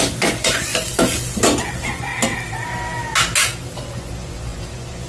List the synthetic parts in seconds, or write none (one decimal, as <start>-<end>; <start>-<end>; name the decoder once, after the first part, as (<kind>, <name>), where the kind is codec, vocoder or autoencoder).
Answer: 0.0-0.7 (vocoder, Vocos); 1.7-2.1; 3.8-5.1